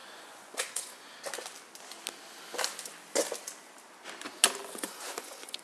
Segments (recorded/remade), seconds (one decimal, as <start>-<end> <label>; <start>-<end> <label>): 0.0-1.2 remade; 1.2-4.6 recorded; 4.6-5.6 remade